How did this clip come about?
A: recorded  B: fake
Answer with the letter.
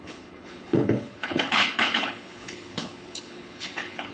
B